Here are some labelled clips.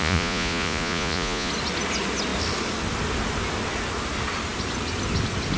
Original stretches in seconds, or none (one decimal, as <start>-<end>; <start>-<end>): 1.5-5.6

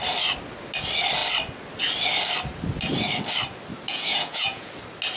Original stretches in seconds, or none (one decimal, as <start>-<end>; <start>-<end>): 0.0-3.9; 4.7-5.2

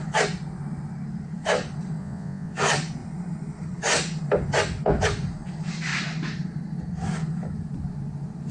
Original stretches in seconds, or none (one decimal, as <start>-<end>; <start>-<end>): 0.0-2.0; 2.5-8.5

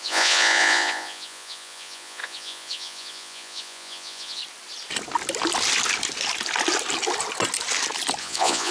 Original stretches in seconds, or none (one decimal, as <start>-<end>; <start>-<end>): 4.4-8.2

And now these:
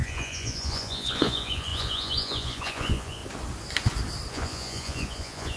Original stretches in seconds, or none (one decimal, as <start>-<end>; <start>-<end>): 3.2-4.3

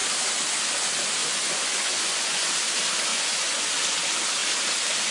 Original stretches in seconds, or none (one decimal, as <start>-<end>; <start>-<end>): 0.0-1.2; 2.5-3.1; 3.7-5.1

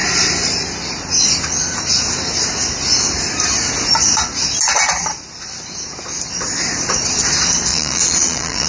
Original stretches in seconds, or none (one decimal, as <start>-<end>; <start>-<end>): 0.0-7.7

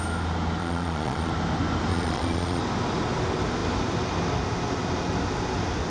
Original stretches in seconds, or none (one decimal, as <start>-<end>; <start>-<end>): 0.0-0.6; 1.3-1.9; 2.6-5.9